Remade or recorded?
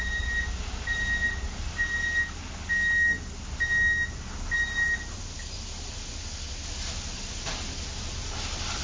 recorded